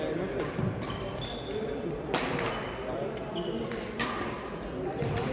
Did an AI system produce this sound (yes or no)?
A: no